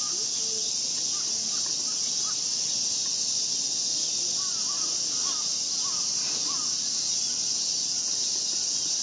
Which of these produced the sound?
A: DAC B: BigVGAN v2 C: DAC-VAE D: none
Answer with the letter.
D